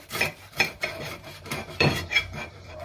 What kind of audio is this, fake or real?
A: fake